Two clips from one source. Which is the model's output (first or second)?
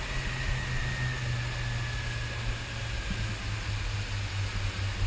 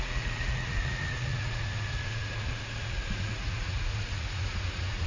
second